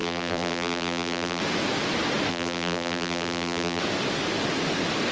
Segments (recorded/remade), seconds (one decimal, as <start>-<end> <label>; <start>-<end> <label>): 0.0-1.4 remade; 1.4-2.3 recorded; 2.3-3.8 remade; 3.8-5.1 recorded